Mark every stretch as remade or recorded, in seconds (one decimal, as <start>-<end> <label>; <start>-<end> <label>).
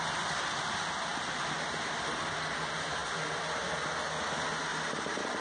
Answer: 0.0-5.4 recorded